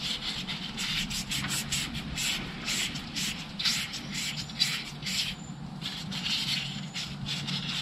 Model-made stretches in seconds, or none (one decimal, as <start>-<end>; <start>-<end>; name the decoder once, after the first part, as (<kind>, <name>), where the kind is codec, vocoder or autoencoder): 0.5-1.1 (vocoder, BigVGAN v2)